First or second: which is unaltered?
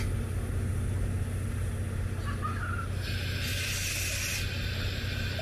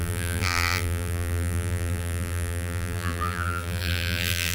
first